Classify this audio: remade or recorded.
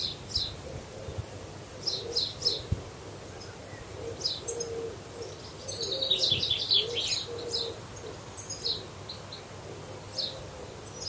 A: recorded